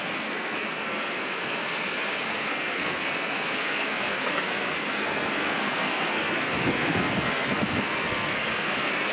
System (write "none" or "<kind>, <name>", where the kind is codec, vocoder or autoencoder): codec, SNAC